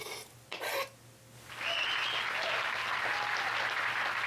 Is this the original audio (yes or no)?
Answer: yes